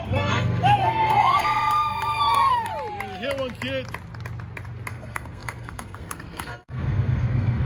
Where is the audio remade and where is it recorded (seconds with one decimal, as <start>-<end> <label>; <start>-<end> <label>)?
0.0-2.7 remade; 2.7-4.9 recorded; 4.9-7.6 remade